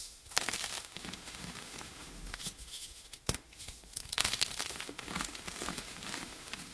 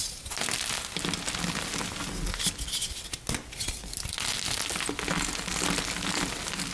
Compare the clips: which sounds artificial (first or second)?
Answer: first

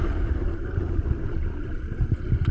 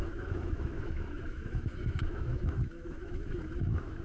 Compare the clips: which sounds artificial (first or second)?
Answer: second